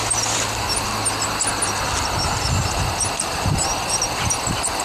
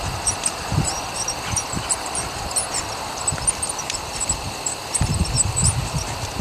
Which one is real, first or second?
first